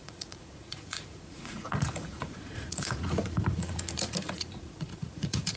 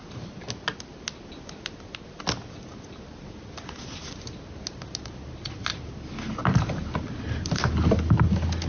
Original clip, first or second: second